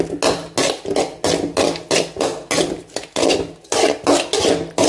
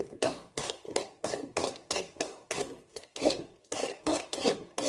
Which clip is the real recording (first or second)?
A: first